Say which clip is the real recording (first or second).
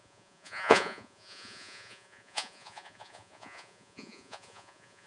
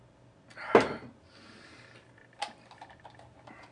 second